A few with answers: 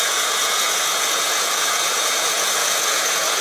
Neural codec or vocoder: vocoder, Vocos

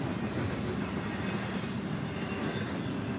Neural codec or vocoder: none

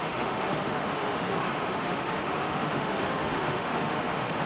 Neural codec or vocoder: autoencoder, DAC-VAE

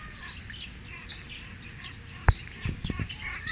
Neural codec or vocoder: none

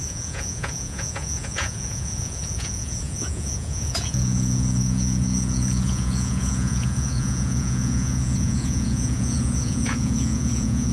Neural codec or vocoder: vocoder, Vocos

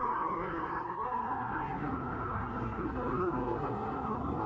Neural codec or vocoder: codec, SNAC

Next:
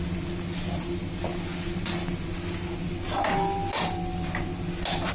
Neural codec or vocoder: none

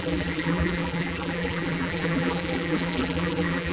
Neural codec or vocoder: vocoder, BigVGAN v2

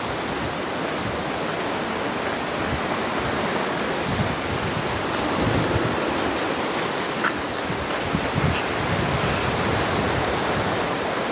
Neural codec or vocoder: none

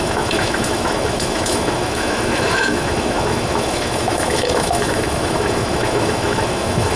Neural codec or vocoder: autoencoder, DAC-VAE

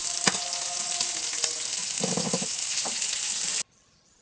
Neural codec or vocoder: none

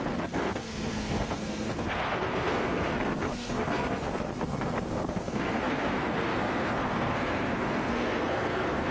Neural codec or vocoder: codec, SNAC